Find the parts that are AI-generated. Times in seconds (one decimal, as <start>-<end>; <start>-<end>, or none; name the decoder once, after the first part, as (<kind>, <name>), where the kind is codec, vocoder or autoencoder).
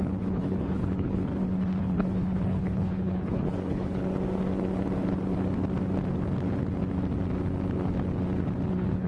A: 0.0-1.3 (codec, HILCodec); 1.8-4.0; 8.7-9.1